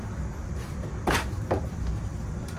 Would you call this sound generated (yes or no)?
no